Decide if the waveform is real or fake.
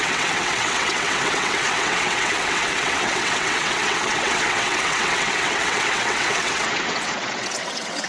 fake